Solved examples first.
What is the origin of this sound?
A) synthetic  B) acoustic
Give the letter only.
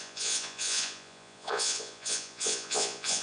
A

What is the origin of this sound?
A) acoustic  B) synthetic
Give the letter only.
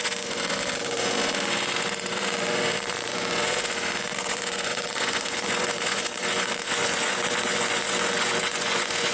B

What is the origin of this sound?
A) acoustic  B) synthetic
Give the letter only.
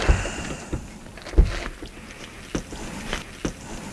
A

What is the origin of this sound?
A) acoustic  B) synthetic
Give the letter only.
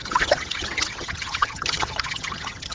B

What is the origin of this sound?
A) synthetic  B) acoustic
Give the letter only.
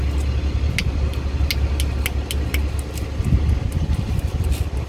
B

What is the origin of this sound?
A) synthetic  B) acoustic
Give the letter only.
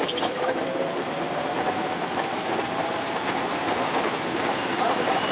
A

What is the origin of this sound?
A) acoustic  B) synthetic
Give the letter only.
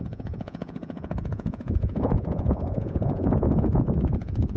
B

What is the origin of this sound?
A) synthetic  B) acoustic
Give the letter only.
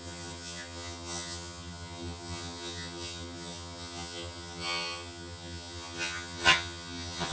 A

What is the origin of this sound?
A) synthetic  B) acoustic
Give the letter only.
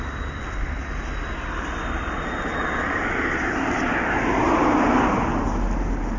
B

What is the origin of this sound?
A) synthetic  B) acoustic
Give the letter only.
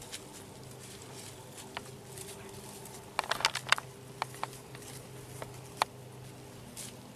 B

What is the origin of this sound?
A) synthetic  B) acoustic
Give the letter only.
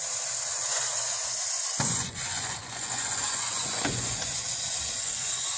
A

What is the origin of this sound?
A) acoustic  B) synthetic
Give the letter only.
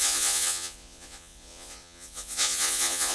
B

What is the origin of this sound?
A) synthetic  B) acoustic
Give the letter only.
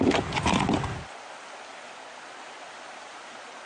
B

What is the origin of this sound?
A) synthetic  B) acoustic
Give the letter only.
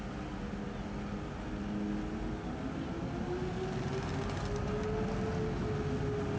B